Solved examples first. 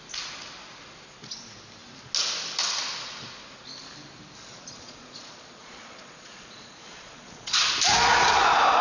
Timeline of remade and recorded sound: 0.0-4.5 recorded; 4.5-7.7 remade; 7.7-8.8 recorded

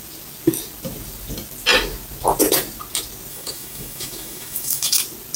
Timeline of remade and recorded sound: 0.0-3.3 recorded; 3.3-5.0 remade; 5.0-5.4 recorded

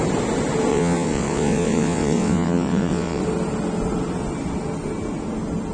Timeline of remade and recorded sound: 0.0-0.7 recorded; 0.7-3.2 remade; 3.2-5.7 recorded

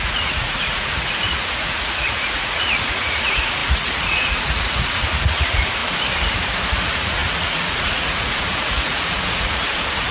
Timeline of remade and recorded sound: 0.0-5.8 remade; 5.8-6.7 recorded; 6.7-10.1 remade

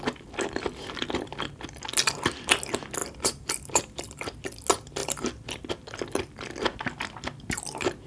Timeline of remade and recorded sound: 0.0-3.0 recorded; 3.0-4.4 remade; 4.4-5.0 recorded; 5.0-5.7 remade; 5.7-8.1 recorded

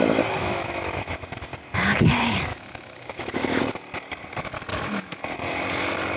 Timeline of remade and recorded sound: 0.0-0.4 recorded; 0.4-1.1 remade; 1.1-2.5 recorded; 2.5-3.6 remade; 3.6-4.7 recorded; 4.7-5.2 remade; 5.2-6.2 recorded